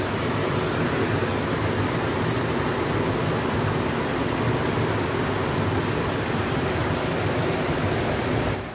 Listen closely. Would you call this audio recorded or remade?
recorded